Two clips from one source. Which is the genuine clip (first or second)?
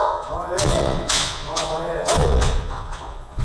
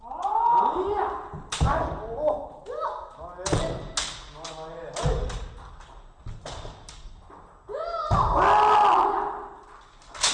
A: second